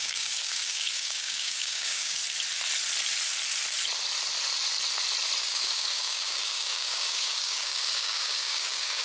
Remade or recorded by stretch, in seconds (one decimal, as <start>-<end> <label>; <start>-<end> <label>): 0.0-2.2 remade; 2.2-5.4 recorded; 5.4-9.0 remade